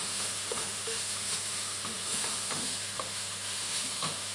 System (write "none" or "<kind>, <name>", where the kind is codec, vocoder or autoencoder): autoencoder, DAC-VAE